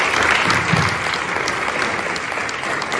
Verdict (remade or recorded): recorded